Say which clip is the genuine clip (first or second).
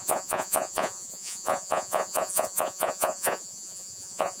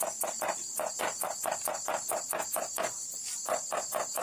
second